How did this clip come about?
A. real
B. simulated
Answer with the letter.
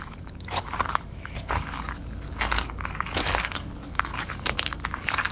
B